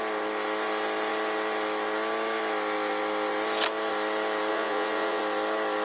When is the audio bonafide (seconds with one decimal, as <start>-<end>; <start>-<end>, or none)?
0.0-4.5; 5.2-5.8